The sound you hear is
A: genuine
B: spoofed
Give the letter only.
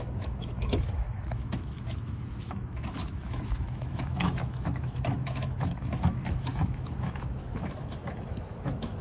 B